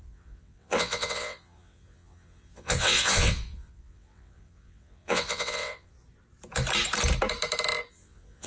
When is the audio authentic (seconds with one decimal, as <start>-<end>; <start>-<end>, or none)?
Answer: 5.9-7.9